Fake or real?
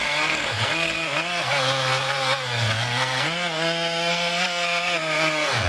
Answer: fake